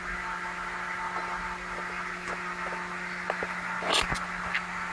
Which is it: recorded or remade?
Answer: recorded